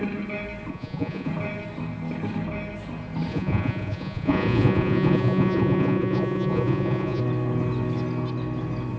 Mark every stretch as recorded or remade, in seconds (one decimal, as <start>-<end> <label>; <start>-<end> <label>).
0.0-0.7 recorded; 0.7-1.3 remade; 1.3-3.3 recorded; 3.3-7.2 remade; 7.2-9.0 recorded

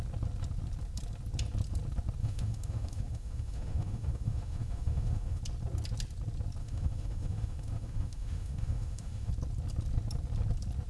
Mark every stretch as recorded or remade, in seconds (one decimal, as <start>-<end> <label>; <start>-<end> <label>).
0.0-2.2 recorded; 2.2-5.4 remade; 5.4-6.6 recorded; 6.6-9.3 remade; 9.3-10.9 recorded

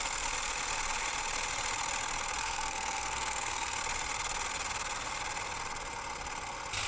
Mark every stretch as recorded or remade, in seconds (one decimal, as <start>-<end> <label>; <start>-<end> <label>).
0.0-2.4 recorded; 2.4-3.8 remade; 3.8-6.9 recorded

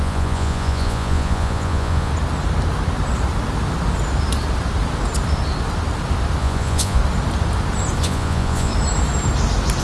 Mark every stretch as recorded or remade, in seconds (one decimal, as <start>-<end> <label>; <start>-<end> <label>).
0.0-2.1 remade; 2.1-6.4 recorded; 6.4-7.0 remade; 7.0-8.0 recorded; 8.0-8.7 remade; 8.7-9.8 recorded